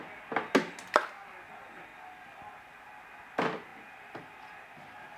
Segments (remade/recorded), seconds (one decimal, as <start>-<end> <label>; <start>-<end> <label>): 0.0-5.2 recorded